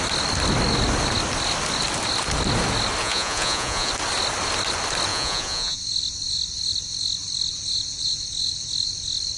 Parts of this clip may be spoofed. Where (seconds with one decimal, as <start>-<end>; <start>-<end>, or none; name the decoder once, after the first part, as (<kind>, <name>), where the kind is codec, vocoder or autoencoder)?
3.0-3.9 (vocoder, Vocos); 5.1-5.8